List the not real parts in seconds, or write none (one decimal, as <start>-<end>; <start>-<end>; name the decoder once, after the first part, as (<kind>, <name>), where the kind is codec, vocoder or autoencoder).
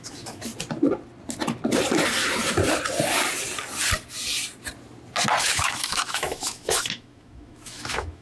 0.0-0.5 (autoencoder, DAC-VAE); 5.4-8.2